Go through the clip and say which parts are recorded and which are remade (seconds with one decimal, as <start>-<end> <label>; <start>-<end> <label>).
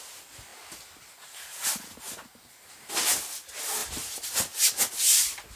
0.0-3.8 recorded; 3.8-5.0 remade; 5.0-5.6 recorded